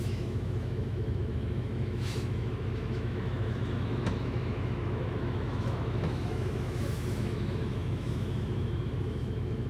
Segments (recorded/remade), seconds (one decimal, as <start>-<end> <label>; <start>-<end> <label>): 0.0-9.7 remade